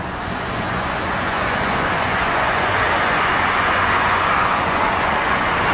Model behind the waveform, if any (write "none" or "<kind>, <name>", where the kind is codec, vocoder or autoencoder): vocoder, Vocos